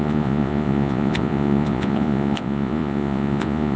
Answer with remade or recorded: remade